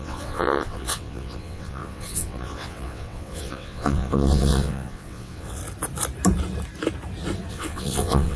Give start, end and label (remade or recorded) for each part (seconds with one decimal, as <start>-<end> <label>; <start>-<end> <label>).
0.0-5.6 remade; 5.6-7.5 recorded; 7.5-8.4 remade